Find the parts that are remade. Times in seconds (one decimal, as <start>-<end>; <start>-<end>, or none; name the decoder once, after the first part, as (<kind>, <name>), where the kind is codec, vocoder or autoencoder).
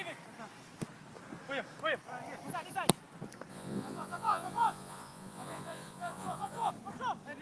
3.5-6.7 (vocoder, Vocos)